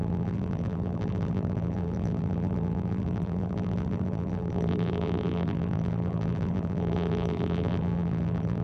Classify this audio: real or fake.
fake